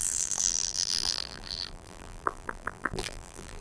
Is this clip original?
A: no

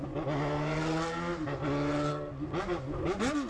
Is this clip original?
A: yes